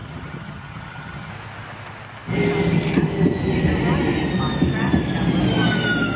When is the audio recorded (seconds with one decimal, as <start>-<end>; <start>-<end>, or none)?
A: 1.3-6.2